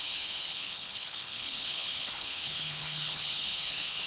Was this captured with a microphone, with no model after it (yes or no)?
no